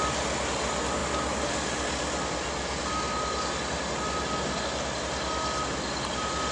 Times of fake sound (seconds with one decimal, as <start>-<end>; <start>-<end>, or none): none